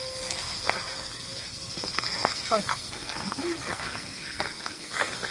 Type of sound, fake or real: fake